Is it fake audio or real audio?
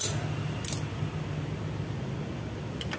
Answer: real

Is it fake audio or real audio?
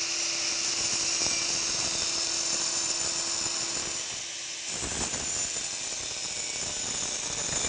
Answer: real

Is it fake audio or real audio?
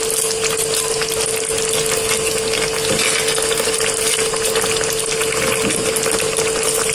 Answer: real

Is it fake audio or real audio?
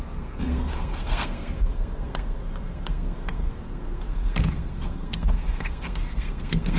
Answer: fake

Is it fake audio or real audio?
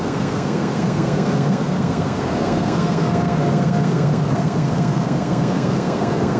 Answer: fake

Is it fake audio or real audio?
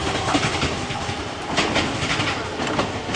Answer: real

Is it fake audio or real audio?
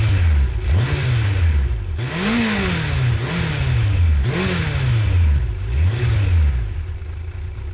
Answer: real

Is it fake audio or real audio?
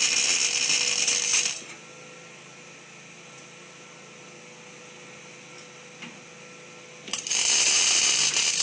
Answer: real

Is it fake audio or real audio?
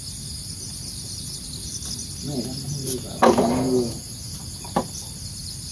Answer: real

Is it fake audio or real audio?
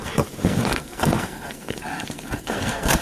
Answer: fake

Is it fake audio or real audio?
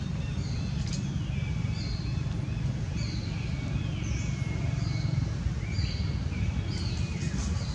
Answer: real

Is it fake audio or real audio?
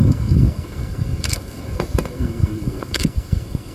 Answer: fake